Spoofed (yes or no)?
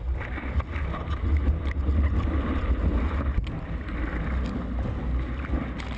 no